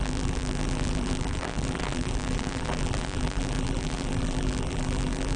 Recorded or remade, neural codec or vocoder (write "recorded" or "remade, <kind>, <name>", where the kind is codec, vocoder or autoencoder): remade, vocoder, BigVGAN v2